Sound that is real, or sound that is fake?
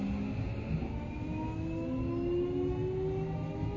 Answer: real